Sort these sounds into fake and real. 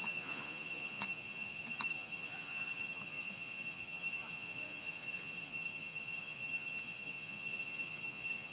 fake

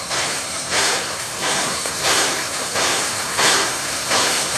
fake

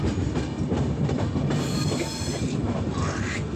real